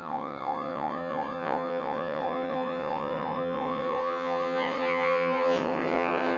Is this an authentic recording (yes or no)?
no